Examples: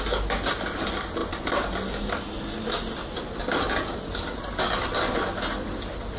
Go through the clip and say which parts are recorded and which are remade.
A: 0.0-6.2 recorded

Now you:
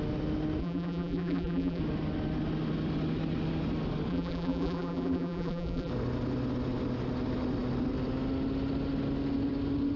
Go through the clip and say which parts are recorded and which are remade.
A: 0.0-0.6 recorded; 0.6-1.8 remade; 1.8-4.1 recorded; 4.1-5.9 remade; 5.9-10.0 recorded